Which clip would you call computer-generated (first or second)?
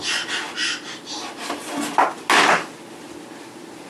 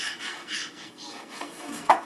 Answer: second